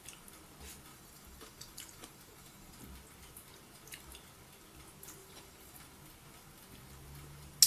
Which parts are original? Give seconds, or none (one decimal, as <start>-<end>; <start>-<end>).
0.0-0.9; 2.8-5.2; 5.8-7.7

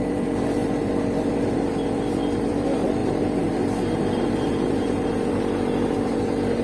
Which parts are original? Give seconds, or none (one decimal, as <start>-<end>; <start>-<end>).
none